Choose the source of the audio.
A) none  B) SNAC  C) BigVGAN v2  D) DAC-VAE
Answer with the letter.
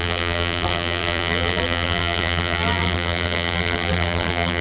C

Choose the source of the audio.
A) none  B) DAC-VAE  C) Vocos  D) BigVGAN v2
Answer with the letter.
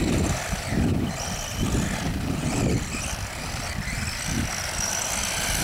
A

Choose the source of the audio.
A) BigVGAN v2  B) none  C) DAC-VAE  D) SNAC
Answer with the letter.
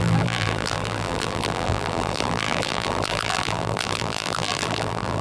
A